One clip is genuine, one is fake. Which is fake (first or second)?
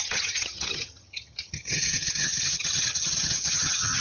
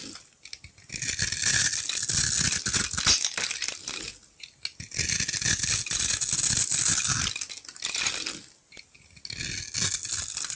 first